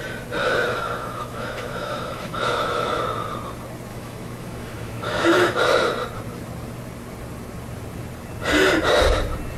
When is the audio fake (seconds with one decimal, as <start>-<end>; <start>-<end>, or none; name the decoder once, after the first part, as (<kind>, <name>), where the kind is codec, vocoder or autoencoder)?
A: 0.4-3.0 (autoencoder, DAC-VAE); 3.9-5.6